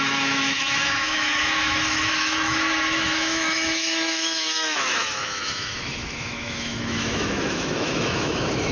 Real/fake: fake